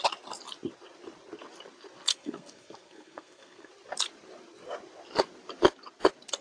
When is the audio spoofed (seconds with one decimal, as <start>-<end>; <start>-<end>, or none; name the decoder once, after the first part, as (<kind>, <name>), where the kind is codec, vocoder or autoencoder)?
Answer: 2.1-3.7 (codec, SNAC)